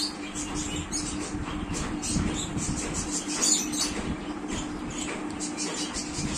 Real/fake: real